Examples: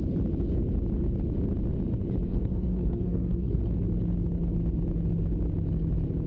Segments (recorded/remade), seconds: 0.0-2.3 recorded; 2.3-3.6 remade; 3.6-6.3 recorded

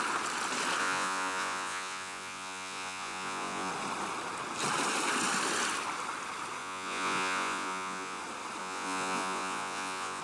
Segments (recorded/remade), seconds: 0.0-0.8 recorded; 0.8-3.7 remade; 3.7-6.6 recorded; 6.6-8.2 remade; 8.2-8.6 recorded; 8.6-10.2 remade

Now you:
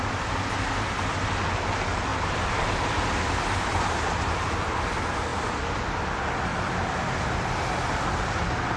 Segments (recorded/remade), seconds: 0.0-8.8 recorded

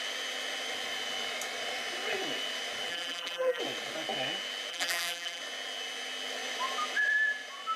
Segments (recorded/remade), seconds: 0.0-2.9 recorded; 2.9-3.6 remade; 3.6-4.7 recorded; 4.7-5.4 remade; 5.4-7.8 recorded

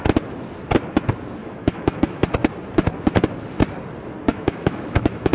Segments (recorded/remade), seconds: 0.0-1.4 recorded; 1.4-2.3 remade; 2.3-4.3 recorded; 4.3-5.3 remade

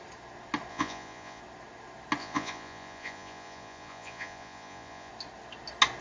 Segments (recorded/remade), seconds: 0.0-0.7 recorded; 0.7-1.4 remade; 1.4-2.2 recorded; 2.2-5.1 remade; 5.1-6.0 recorded